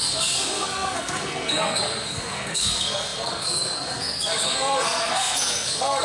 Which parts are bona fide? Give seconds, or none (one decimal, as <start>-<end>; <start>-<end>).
none